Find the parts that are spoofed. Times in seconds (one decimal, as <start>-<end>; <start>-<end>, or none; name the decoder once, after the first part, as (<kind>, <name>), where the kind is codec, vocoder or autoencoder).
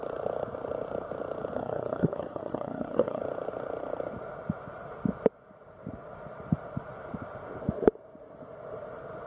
1.6-3.2 (codec, SNAC)